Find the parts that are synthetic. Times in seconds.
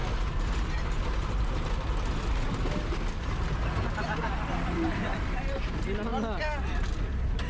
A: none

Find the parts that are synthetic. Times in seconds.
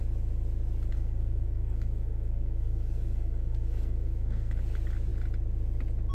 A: 0.9-4.6 (codec, SNAC)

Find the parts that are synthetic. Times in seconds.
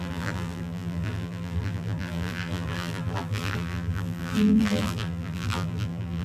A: 0.0-6.2 (vocoder, BigVGAN v2)